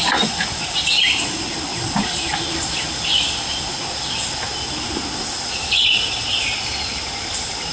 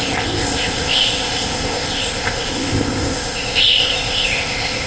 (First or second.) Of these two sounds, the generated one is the second